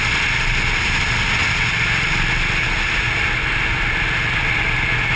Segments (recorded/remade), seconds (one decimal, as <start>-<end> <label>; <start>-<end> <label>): 0.0-5.2 recorded